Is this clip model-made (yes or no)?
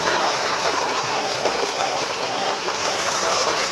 yes